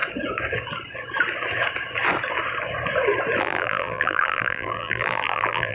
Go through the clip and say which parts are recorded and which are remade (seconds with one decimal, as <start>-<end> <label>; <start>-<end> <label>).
0.0-3.4 recorded; 3.4-5.7 remade